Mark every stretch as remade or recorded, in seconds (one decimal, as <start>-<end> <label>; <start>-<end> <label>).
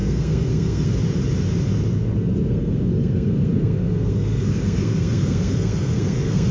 0.0-0.9 remade; 0.9-2.5 recorded; 2.5-6.5 remade